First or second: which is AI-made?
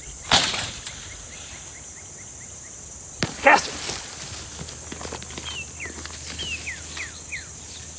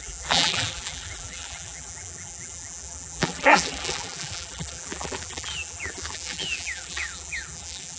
second